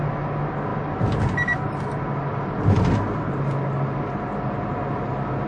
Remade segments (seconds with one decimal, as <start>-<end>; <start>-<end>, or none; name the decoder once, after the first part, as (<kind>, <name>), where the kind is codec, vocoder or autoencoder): none